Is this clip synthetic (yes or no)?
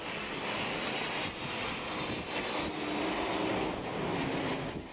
no